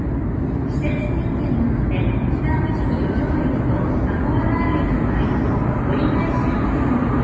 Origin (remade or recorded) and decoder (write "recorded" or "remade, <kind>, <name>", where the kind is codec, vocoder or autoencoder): recorded